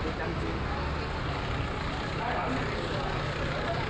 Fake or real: real